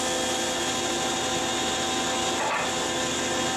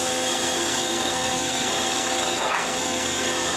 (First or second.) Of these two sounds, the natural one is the first